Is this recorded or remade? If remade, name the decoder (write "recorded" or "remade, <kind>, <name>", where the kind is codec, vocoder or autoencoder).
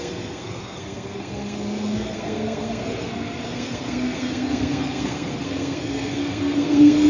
remade, codec, SNAC